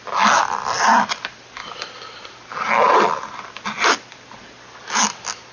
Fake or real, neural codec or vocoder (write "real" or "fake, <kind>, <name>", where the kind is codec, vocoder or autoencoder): real